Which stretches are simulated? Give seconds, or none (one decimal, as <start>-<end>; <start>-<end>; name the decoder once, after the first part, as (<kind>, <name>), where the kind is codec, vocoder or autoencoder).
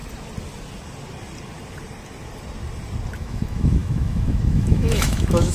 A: 3.2-5.5 (autoencoder, DAC-VAE)